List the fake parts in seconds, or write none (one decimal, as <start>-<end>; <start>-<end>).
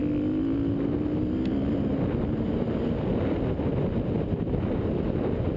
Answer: none